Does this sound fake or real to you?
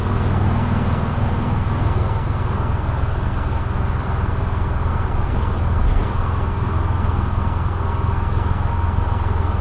fake